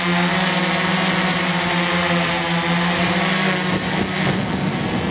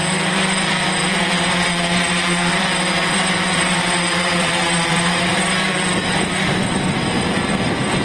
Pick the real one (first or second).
first